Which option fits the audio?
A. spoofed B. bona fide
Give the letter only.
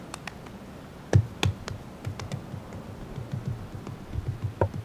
B